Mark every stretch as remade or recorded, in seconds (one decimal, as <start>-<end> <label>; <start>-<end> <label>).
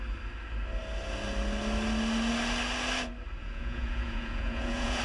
0.0-3.4 recorded; 3.4-5.0 remade